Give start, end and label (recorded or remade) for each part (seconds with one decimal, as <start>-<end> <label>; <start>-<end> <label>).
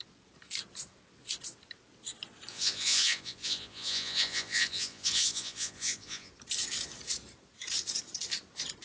0.0-2.5 recorded; 2.5-6.3 remade; 6.3-8.8 recorded